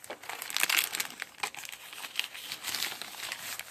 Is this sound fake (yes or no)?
no